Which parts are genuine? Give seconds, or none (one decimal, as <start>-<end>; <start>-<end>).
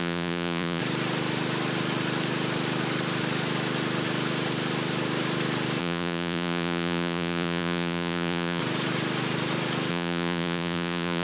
0.8-5.8; 8.6-9.9